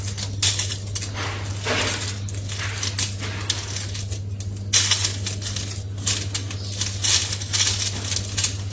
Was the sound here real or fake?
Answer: real